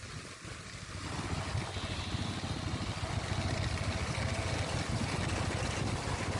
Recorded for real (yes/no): yes